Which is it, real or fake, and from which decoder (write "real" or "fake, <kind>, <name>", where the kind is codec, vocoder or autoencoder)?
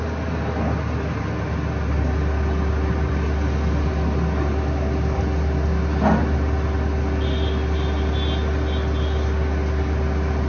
real